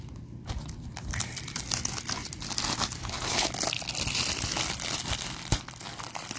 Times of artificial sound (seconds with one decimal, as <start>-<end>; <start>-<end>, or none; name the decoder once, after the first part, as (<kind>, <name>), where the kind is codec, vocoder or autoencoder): 3.0-3.5 (codec, HILCodec)